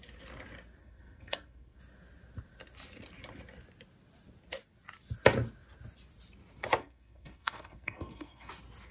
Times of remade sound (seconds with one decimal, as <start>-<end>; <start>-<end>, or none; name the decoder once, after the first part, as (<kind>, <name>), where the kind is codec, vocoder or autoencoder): 0.8-1.8 (codec, SNAC); 6.8-8.5